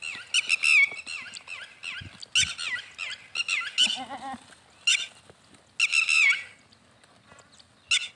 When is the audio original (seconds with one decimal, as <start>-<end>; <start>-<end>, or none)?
0.0-8.2